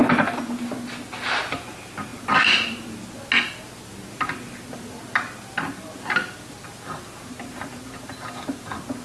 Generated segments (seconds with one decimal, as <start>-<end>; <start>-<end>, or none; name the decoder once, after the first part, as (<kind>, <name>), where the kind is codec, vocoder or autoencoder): none